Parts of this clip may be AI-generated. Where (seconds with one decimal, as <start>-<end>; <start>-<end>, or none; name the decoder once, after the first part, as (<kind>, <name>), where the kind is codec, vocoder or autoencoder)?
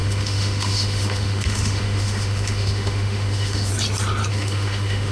0.0-3.7 (autoencoder, DAC-VAE); 4.3-5.1